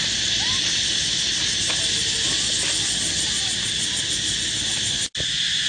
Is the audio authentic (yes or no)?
yes